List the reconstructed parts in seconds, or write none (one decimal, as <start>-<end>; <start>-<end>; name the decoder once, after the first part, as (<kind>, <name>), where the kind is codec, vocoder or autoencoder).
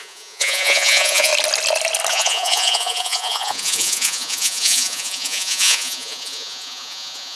0.0-1.3 (vocoder, Vocos); 2.1-7.4